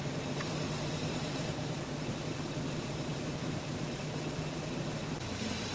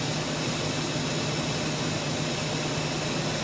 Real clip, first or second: second